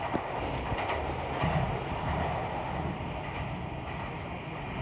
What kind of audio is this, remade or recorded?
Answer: recorded